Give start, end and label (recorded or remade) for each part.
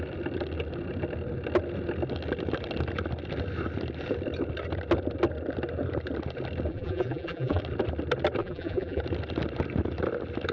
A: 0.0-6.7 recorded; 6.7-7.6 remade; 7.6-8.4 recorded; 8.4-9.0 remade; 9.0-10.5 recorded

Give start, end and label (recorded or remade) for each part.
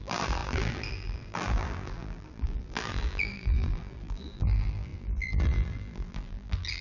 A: 0.0-6.8 remade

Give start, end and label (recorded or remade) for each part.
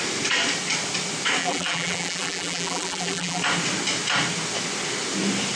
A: 0.0-1.4 recorded; 1.4-3.4 remade; 3.4-5.6 recorded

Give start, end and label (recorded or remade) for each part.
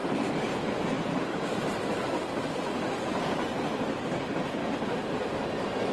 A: 0.0-2.4 remade; 2.4-4.6 recorded; 4.6-5.3 remade; 5.3-5.9 recorded